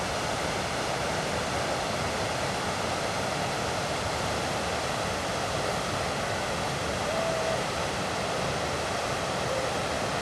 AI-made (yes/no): no